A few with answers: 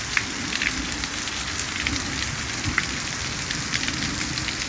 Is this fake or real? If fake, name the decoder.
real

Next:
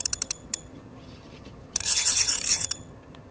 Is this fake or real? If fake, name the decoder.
fake, vocoder, HiFi-GAN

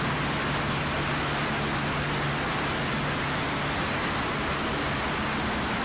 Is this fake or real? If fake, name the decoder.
real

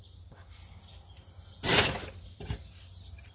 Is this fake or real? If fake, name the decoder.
real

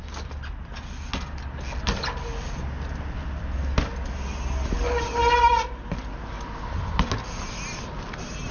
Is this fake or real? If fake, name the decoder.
real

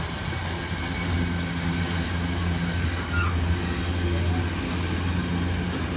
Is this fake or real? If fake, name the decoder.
real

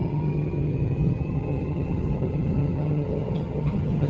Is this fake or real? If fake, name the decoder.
fake, vocoder, HiFi-GAN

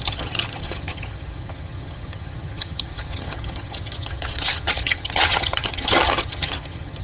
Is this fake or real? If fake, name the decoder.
fake, vocoder, HiFi-GAN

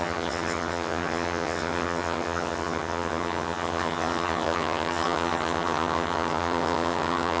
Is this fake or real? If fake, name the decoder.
fake, vocoder, HiFi-GAN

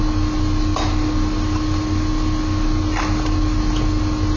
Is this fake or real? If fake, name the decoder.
real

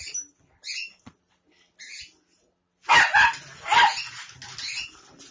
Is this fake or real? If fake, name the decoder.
real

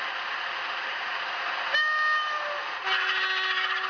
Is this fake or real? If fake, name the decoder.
real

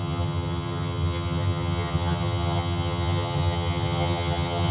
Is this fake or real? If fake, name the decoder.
fake, vocoder, HiFi-GAN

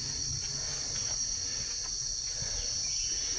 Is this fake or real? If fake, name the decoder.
real